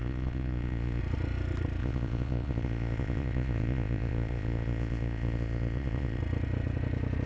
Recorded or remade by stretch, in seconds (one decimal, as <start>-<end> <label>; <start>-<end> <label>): 0.0-1.0 remade; 1.0-1.8 recorded; 1.8-6.2 remade; 6.2-7.3 recorded